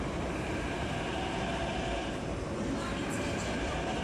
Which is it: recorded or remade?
recorded